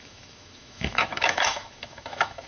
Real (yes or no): no